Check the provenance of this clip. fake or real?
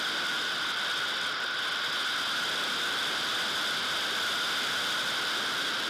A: real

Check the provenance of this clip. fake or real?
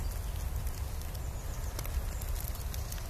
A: real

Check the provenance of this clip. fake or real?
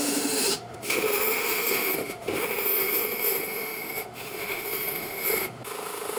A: fake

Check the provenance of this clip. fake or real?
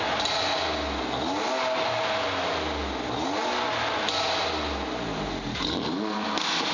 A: real